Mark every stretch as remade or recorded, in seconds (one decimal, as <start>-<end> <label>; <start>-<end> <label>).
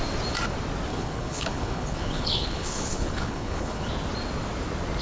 0.0-0.9 recorded; 0.9-3.9 remade; 3.9-5.0 recorded